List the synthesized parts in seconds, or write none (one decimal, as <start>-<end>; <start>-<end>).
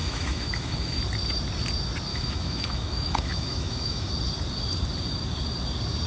0.0-1.0; 2.1-4.1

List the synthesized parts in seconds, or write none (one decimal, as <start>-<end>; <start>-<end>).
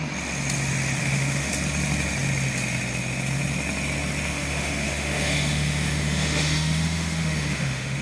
1.0-1.5; 4.3-8.0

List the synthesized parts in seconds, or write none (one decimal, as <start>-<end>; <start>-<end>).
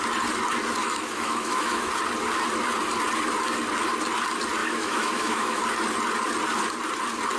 0.8-1.9; 4.6-5.6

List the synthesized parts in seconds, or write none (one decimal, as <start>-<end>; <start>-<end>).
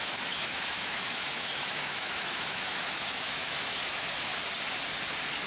0.0-4.3